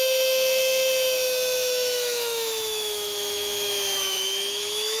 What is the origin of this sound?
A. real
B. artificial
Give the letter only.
B